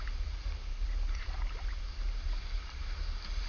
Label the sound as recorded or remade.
recorded